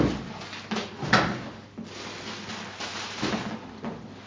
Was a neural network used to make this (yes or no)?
no